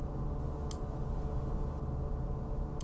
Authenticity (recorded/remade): recorded